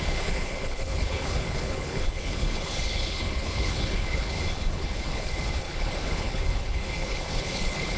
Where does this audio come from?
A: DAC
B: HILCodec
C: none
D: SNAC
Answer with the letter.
B